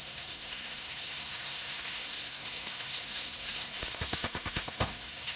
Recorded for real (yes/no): no